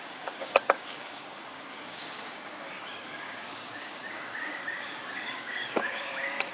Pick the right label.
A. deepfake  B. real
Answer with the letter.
A